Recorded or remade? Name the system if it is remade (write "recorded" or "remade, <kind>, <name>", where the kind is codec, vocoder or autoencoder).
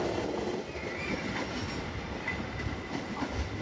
recorded